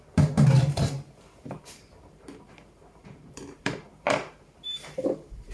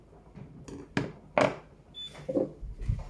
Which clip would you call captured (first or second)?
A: second